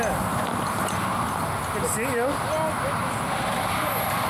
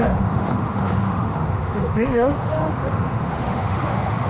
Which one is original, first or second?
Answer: first